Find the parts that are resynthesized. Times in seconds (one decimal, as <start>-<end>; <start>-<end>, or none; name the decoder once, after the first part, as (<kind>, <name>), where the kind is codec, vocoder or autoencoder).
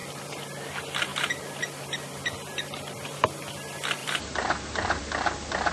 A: 1.1-2.2 (vocoder, BigVGAN v2); 4.0-5.0